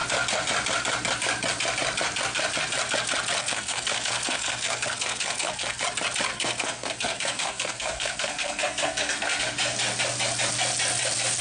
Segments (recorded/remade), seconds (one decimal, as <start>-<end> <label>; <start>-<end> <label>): 0.0-3.4 recorded; 3.4-5.8 remade; 5.8-6.3 recorded; 6.3-9.4 remade; 9.4-11.4 recorded